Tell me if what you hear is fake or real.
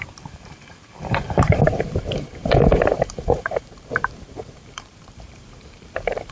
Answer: fake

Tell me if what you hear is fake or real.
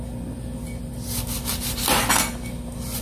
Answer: real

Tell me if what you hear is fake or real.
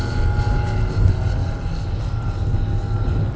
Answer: real